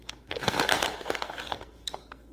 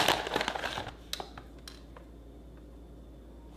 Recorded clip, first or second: second